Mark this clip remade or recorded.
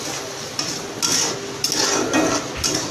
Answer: recorded